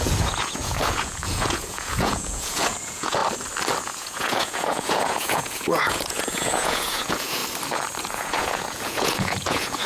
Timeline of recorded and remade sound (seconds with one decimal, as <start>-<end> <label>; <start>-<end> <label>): 0.0-3.2 remade; 3.2-3.8 recorded; 3.8-7.4 remade; 7.4-8.0 recorded; 8.0-9.9 remade